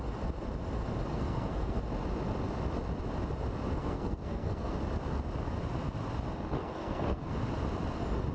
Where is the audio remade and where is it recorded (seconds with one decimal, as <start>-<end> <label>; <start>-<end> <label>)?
0.0-1.1 recorded; 1.1-1.8 remade; 1.8-3.8 recorded; 3.8-4.8 remade; 4.8-6.6 recorded; 6.6-7.4 remade; 7.4-8.3 recorded